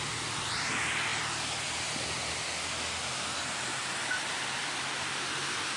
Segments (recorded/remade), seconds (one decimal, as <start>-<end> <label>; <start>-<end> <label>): 0.0-5.8 recorded